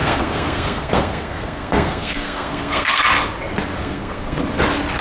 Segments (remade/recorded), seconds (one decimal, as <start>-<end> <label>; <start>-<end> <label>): 0.0-3.0 remade; 3.0-3.8 recorded; 3.8-4.4 remade; 4.4-5.0 recorded